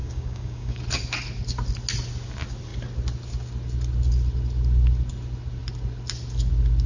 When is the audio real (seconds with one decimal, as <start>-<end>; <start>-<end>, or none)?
0.8-6.9